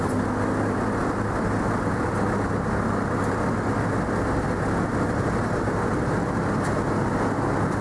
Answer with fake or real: real